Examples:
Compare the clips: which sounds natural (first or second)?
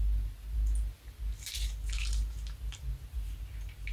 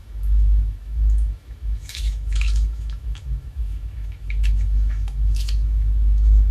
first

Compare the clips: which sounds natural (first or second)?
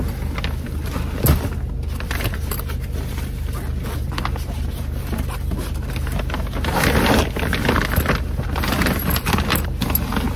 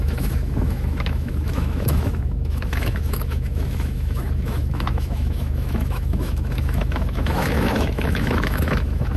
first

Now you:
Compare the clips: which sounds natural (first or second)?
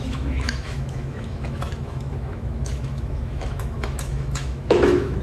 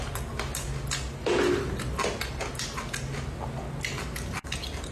second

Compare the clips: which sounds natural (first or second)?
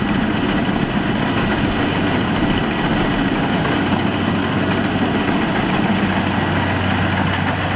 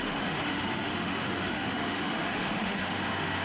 first